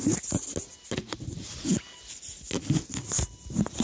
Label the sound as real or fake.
real